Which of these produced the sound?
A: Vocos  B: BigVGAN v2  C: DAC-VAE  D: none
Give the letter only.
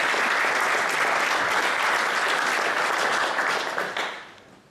D